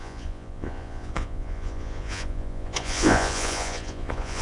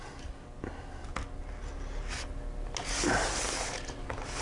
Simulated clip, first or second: first